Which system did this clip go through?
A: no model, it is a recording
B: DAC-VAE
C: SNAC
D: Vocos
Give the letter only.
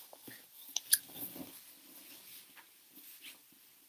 A